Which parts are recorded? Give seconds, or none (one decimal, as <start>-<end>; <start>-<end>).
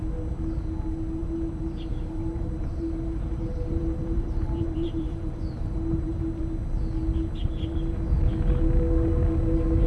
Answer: 0.0-1.2; 6.4-7.4; 8.3-9.9